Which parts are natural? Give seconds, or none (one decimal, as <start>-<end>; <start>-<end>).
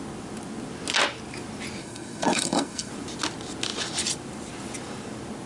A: 0.0-1.8; 2.9-5.5